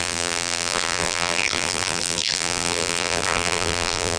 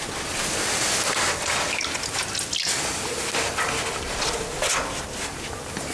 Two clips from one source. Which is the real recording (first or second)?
second